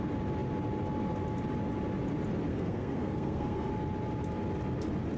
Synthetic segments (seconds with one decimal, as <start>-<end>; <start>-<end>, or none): 2.5-3.7